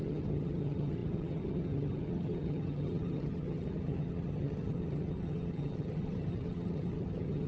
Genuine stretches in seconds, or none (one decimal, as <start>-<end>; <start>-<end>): none